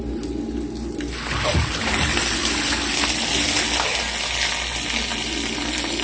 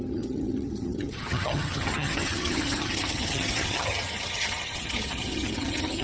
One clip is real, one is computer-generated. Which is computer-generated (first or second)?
second